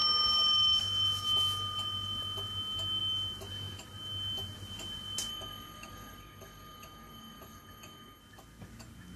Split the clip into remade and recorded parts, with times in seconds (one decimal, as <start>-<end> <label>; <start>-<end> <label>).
0.0-5.3 recorded; 5.3-8.2 remade; 8.2-9.2 recorded